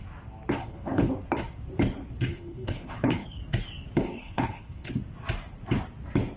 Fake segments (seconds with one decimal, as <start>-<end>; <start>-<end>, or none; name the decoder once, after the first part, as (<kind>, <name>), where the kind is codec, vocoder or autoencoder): 0.6-1.1 (codec, HILCodec); 2.3-3.4; 4.1-4.9